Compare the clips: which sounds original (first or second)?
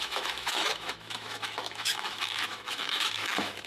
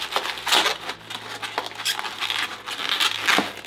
second